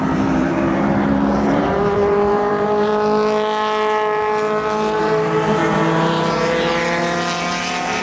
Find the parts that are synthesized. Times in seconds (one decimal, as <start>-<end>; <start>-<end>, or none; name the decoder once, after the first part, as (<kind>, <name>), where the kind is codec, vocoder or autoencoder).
0.0-2.9 (vocoder, BigVGAN v2); 5.0-8.0